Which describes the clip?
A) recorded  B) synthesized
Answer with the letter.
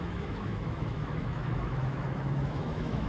B